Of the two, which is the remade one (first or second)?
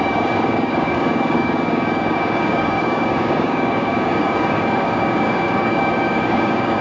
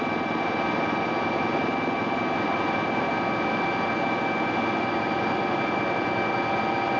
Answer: first